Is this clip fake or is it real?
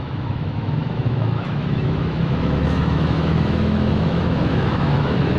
fake